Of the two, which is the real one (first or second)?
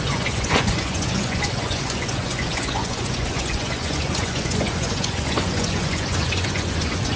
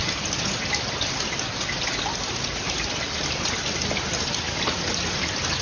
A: second